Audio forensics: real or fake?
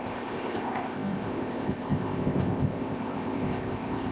fake